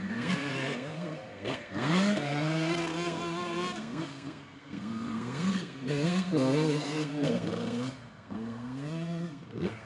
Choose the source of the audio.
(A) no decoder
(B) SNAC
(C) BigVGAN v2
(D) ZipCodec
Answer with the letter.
B